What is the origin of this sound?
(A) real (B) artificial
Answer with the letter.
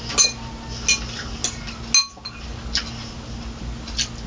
A